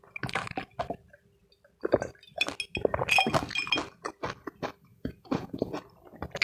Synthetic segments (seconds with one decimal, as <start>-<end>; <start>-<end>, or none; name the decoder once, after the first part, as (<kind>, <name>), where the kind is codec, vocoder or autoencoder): 4.9-5.8 (vocoder, Vocos)